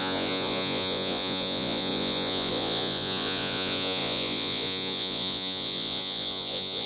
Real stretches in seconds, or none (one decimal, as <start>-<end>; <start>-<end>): none